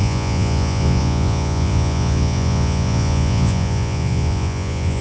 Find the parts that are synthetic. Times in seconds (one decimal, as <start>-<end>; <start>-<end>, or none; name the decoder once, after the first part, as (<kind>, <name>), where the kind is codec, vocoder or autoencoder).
0.0-5.0 (vocoder, Vocos)